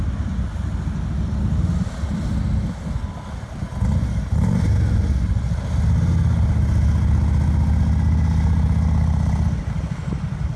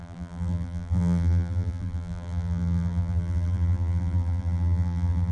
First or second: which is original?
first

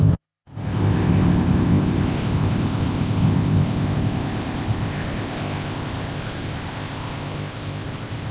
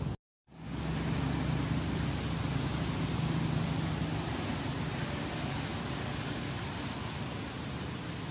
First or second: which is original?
second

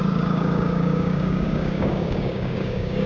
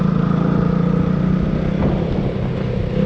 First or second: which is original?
second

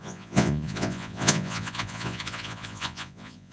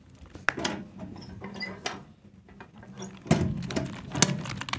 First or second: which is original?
second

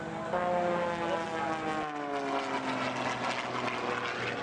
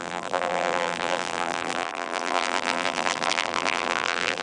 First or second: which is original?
first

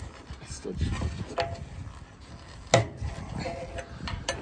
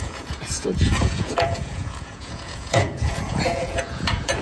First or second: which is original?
first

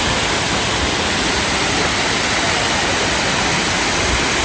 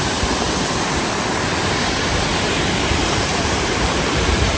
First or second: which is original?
first